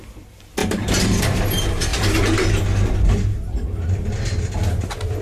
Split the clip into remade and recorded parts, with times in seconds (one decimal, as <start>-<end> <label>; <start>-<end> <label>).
0.0-0.6 recorded; 0.6-1.2 remade; 1.2-5.2 recorded